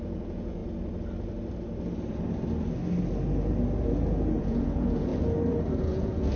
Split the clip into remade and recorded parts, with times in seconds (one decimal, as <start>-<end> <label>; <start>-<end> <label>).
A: 0.0-0.6 remade; 0.6-4.4 recorded; 4.4-5.1 remade; 5.1-5.8 recorded; 5.8-6.4 remade